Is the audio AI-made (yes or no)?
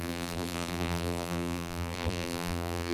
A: yes